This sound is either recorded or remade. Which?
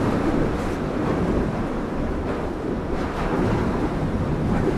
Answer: remade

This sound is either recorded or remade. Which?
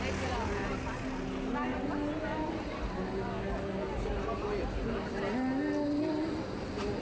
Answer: recorded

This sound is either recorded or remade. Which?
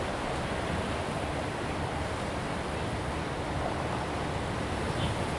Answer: recorded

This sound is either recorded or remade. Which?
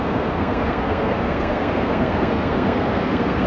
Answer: remade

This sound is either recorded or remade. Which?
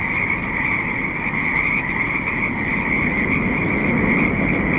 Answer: recorded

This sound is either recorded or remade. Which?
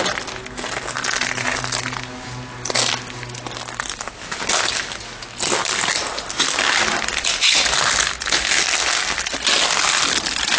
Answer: recorded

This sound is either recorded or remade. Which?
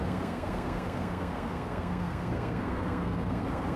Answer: remade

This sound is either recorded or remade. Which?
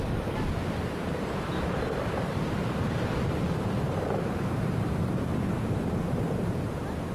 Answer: remade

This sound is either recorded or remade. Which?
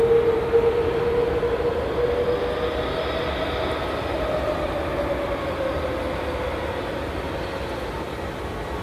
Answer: recorded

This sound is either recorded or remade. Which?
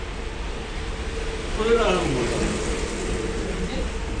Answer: recorded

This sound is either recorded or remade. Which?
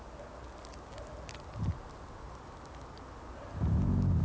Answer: recorded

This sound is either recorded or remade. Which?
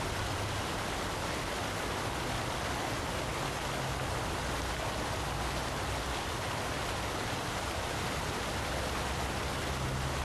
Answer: recorded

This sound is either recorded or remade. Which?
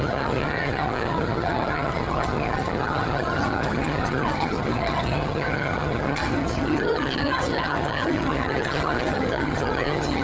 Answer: remade